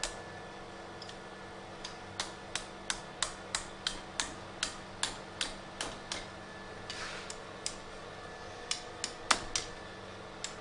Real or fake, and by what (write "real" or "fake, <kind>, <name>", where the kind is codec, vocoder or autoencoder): real